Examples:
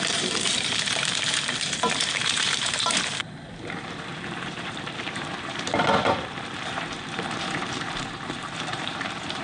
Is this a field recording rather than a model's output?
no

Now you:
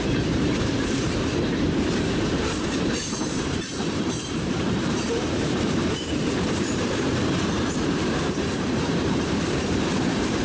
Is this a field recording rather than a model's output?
no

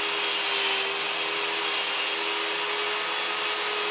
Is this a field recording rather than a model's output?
yes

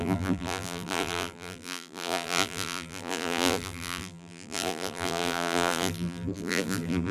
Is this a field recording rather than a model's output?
no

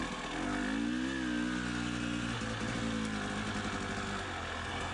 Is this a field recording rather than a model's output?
yes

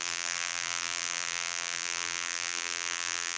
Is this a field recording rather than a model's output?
no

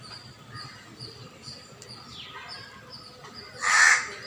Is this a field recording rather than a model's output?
yes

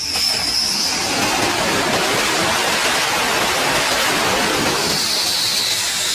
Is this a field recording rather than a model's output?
yes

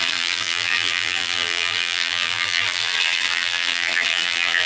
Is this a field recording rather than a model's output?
no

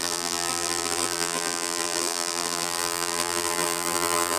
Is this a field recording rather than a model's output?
no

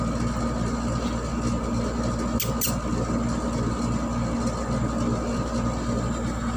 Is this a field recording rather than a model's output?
yes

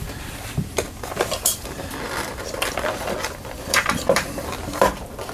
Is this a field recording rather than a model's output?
no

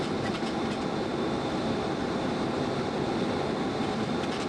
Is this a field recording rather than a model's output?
yes